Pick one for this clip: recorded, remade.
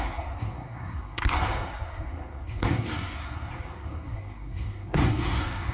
remade